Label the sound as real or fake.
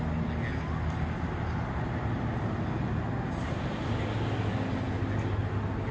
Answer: real